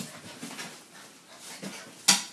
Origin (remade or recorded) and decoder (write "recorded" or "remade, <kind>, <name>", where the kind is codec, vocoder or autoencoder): recorded